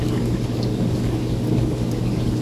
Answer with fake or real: fake